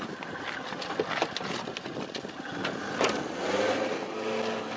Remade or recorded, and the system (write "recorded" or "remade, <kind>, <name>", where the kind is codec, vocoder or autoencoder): recorded